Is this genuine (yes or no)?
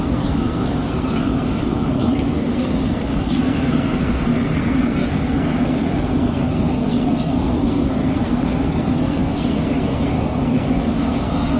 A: no